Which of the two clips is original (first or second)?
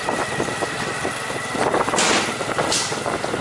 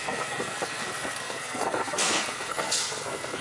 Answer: first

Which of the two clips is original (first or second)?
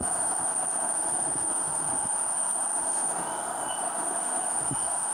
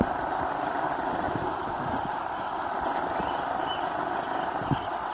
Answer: second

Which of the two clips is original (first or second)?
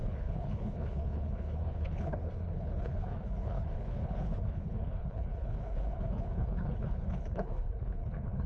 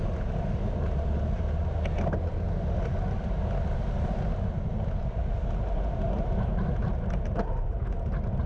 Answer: second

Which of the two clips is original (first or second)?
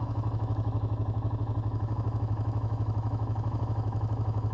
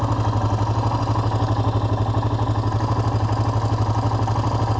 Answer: second